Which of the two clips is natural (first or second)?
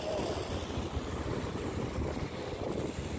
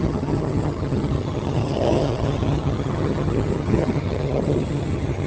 first